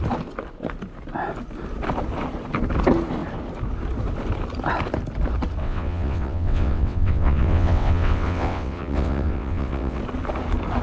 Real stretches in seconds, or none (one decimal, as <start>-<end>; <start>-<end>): 0.0-5.6; 10.0-10.8